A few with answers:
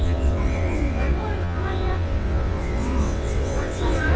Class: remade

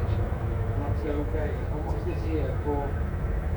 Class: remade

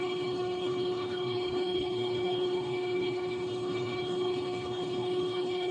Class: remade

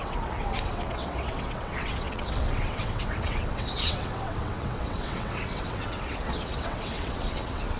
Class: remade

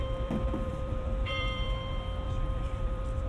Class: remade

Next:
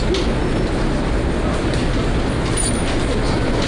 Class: recorded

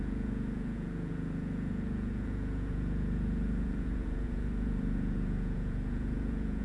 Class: remade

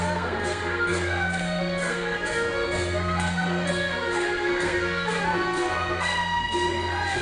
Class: remade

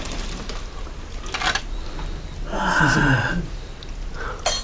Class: recorded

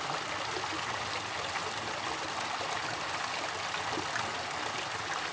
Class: recorded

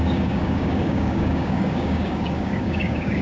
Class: remade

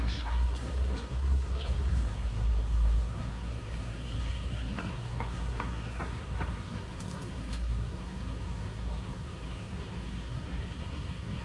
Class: remade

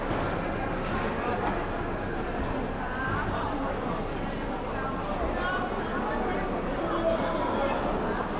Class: recorded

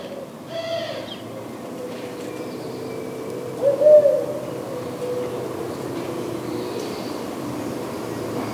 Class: recorded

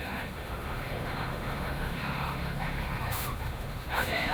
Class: remade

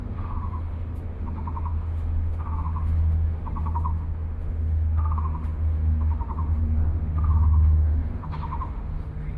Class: remade